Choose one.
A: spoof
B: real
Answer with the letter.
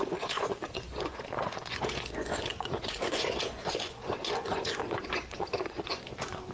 A